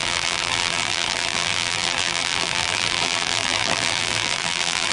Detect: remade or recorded remade